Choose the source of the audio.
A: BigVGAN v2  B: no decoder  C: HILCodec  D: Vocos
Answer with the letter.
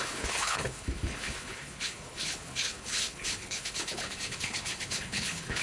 C